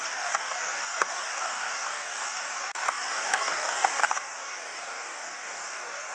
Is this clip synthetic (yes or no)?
yes